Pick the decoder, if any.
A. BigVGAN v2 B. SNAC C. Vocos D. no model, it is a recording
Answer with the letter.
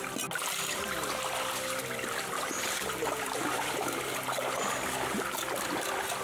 D